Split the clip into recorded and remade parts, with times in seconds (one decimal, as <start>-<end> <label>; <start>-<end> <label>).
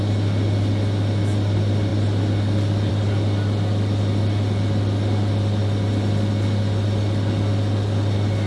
0.0-8.5 recorded